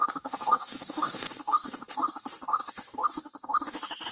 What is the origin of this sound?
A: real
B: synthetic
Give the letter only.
B